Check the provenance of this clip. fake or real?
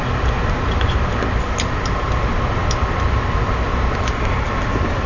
real